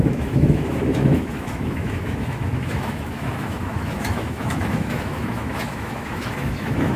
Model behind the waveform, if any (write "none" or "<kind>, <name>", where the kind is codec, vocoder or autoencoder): autoencoder, DAC-VAE